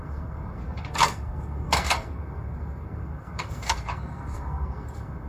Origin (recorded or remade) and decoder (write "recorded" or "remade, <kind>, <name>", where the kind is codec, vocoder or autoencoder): remade, codec, SNAC